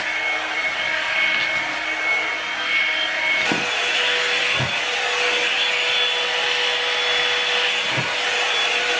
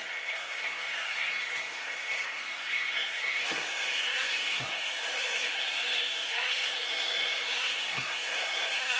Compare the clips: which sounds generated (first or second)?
second